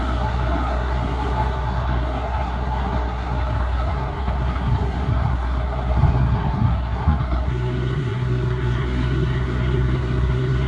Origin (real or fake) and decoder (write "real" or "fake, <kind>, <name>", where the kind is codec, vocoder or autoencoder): fake, codec, SNAC